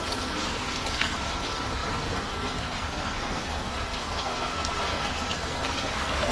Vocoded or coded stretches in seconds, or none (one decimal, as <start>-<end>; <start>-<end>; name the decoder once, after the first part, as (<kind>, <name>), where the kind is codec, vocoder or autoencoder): 0.0-6.3 (codec, SNAC)